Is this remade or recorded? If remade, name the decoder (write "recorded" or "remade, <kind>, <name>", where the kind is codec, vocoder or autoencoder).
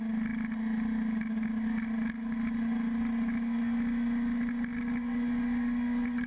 recorded